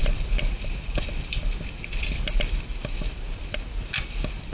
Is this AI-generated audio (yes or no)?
no